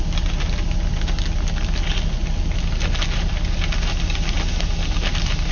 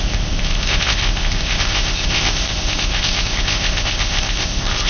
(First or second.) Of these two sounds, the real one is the first